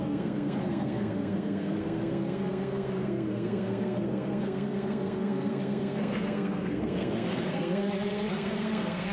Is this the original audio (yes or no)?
no